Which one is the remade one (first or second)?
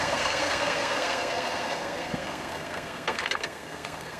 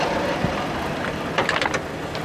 first